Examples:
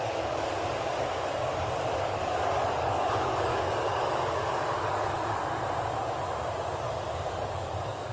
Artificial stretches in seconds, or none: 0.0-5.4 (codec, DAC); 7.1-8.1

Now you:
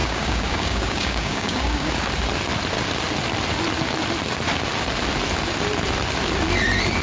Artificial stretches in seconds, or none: 0.0-1.9 (codec, DAC)

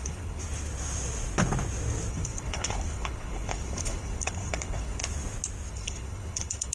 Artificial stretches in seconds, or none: 0.0-0.4 (codec, HILCodec); 2.1-5.0; 5.7-6.7

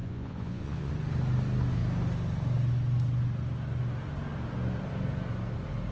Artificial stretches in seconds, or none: 0.0-0.9 (vocoder, Vocos)

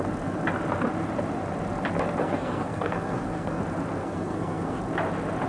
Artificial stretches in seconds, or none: 2.2-3.6 (codec, SNAC); 4.0-4.8

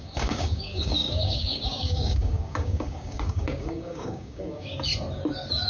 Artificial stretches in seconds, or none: 0.0-4.9 (codec, DAC)

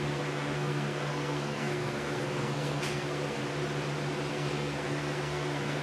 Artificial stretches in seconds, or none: 0.0-3.4 (codec, SNAC); 4.3-5.8